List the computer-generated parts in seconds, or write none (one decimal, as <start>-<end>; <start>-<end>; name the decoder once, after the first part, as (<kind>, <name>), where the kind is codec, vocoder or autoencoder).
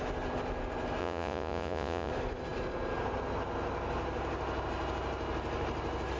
1.0-2.1 (vocoder, Vocos)